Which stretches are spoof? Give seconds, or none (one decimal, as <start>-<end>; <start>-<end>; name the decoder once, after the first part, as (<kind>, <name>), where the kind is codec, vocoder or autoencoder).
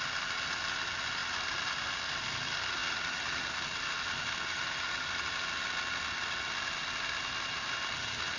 none